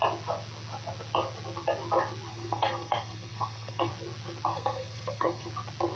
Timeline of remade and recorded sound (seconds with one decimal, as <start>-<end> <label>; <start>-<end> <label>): 0.0-2.3 recorded; 2.3-3.9 remade; 3.9-4.5 recorded; 4.5-5.5 remade; 5.5-6.0 recorded